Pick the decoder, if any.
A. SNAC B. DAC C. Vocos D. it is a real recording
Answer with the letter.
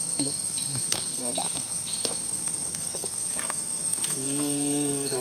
A